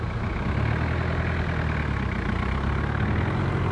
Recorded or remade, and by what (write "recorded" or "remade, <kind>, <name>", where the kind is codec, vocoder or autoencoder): recorded